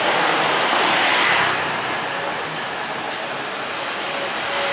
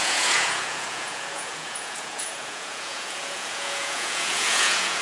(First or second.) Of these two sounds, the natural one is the first